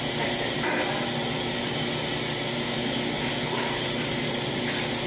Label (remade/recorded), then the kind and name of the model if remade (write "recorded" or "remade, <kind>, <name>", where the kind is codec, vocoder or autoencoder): recorded